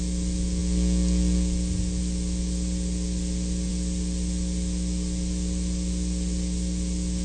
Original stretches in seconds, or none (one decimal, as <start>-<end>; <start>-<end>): 0.0-7.2

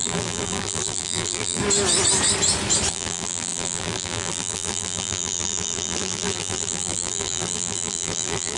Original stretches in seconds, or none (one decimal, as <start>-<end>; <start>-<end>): 1.6-2.9

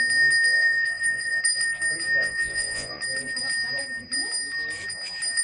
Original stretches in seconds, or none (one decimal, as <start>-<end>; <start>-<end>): 0.0-0.5; 1.4-2.2; 3.0-5.4

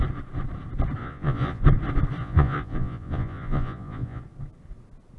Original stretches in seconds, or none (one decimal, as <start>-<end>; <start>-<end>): 0.0-1.0; 1.6-2.2; 4.2-5.2

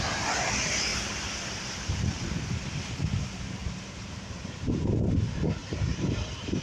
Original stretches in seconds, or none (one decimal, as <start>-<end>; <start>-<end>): 0.0-0.9; 1.9-3.6; 4.8-5.6

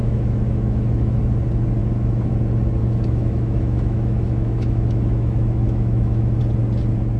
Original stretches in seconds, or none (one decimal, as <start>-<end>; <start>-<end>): 1.2-1.8; 2.3-2.8; 6.4-7.2

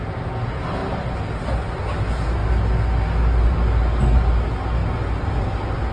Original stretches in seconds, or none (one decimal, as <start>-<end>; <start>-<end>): 0.0-5.9